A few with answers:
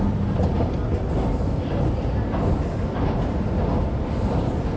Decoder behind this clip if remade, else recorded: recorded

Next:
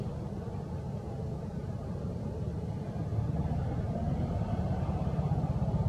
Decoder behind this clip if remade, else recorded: recorded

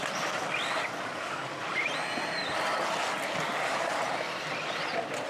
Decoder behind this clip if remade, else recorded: recorded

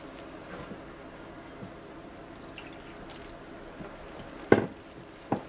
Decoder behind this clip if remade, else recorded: recorded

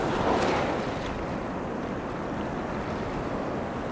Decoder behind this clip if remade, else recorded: recorded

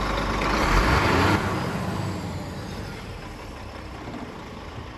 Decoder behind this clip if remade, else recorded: recorded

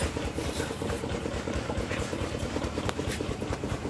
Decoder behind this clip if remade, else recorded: remade, vocoder, BigVGAN v2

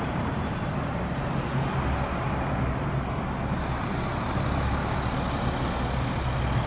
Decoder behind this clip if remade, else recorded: recorded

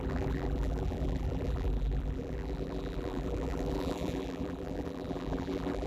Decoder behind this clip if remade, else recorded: remade, vocoder, BigVGAN v2